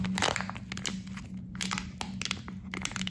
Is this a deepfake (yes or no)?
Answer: no